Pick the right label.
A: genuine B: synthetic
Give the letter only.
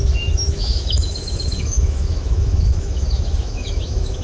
B